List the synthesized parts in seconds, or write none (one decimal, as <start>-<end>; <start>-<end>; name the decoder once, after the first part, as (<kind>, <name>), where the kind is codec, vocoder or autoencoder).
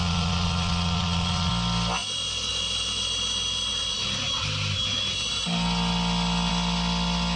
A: 0.0-1.5 (vocoder, Vocos)